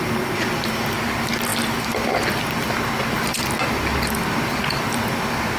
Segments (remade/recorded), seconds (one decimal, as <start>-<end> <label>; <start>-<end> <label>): 0.0-5.6 recorded